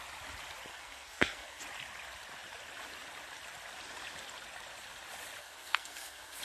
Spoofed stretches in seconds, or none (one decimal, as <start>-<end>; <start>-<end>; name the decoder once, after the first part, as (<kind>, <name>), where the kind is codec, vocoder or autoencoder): 0.7-1.6 (codec, SNAC); 5.4-6.4